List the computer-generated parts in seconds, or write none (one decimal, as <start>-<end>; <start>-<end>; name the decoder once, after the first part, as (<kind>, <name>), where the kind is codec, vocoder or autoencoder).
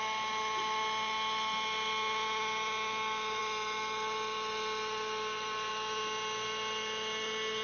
none